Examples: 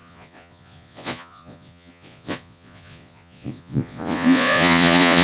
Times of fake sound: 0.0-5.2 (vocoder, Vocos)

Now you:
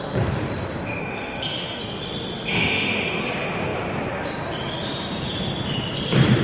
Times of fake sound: 1.0-1.8 (autoencoder, DAC-VAE); 2.5-3.2

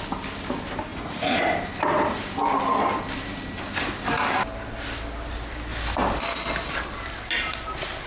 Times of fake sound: 0.9-1.4 (vocoder, Vocos)